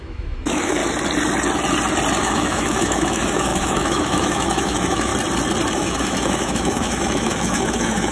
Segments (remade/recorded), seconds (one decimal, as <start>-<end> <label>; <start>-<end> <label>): 0.0-0.8 remade; 0.8-2.2 recorded; 2.2-5.1 remade; 5.1-5.7 recorded; 5.7-8.1 remade